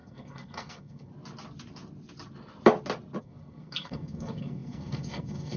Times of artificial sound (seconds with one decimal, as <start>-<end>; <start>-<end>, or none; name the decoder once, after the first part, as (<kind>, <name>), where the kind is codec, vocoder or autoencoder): 0.0-1.1 (codec, SNAC); 3.2-5.6